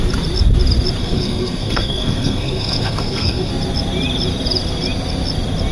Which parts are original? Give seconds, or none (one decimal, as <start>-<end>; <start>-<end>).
0.0-1.0; 3.5-5.7

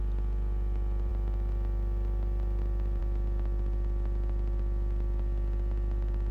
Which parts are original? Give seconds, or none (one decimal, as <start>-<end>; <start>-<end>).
0.0-6.3